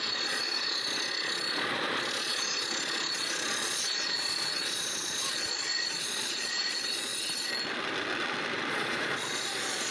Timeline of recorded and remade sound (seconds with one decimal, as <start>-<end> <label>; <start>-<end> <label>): 0.0-7.1 remade; 7.1-8.7 recorded; 8.7-9.9 remade